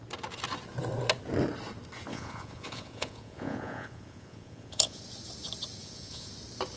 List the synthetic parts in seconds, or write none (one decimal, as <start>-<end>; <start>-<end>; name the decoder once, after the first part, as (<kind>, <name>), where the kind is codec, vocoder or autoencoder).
2.1-5.0 (vocoder, Vocos); 5.8-6.3